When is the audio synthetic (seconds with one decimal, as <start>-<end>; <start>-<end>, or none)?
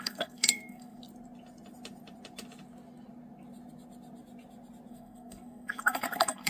0.0-1.0; 4.9-6.5